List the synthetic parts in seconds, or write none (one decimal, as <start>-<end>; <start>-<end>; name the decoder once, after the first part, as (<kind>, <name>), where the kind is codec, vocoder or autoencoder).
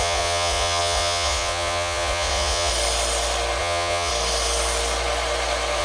0.0-2.7 (vocoder, Vocos); 3.6-4.1